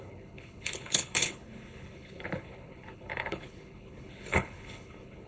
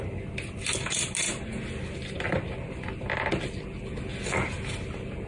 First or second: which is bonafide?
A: second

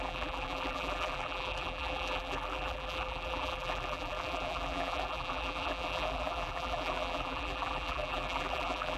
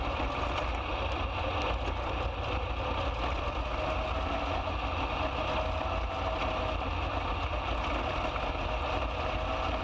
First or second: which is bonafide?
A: second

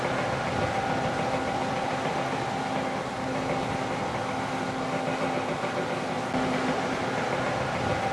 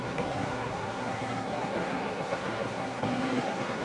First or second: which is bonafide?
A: first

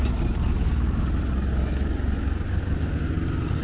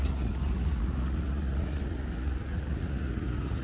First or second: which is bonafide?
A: first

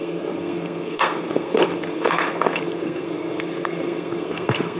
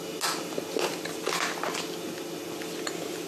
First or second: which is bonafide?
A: second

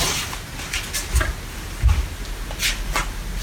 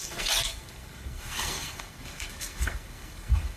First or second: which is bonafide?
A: first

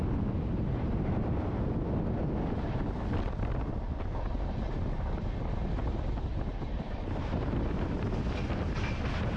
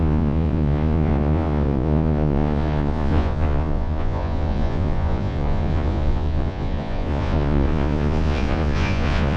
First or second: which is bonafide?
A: first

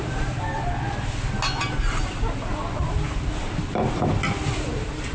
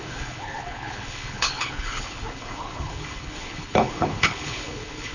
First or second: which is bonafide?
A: first